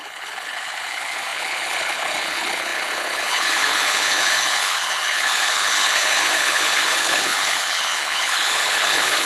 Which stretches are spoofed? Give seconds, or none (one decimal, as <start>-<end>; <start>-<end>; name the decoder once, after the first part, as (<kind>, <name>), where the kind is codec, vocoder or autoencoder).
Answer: 0.0-9.3 (codec, HILCodec)